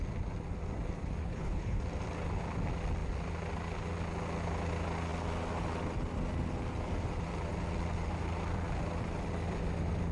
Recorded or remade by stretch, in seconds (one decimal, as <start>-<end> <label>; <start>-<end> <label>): 0.0-1.2 recorded; 1.2-1.8 remade; 1.8-10.1 recorded